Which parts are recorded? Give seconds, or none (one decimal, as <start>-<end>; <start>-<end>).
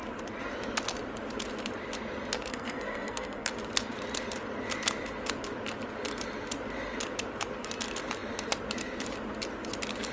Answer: 0.0-2.5; 3.5-10.1